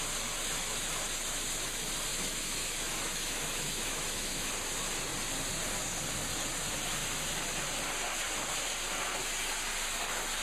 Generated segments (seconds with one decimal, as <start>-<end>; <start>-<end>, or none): 2.1-4.5